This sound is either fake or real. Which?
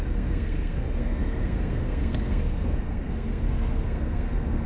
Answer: fake